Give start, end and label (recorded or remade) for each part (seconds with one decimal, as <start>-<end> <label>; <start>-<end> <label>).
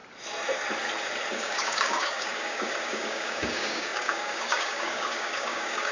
0.0-1.3 recorded; 1.3-5.9 remade